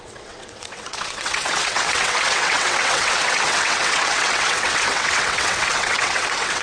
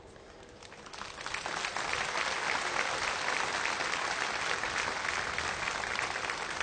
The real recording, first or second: second